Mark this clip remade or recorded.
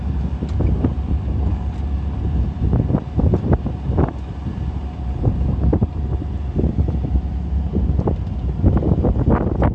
recorded